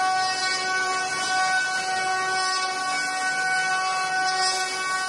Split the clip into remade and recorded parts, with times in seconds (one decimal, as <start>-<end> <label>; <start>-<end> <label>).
0.0-0.4 recorded; 0.4-1.1 remade; 1.1-5.1 recorded